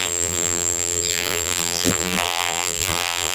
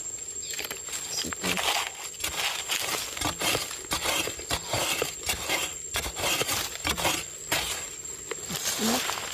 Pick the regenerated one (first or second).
first